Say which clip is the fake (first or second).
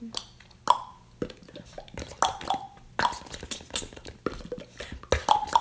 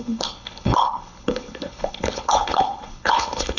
second